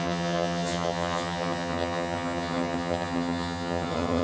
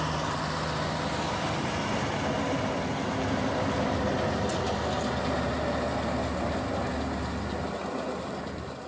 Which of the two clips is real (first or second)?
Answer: second